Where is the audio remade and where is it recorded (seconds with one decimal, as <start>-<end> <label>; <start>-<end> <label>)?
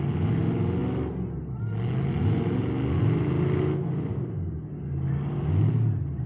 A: 0.0-4.1 recorded; 4.1-5.4 remade; 5.4-6.3 recorded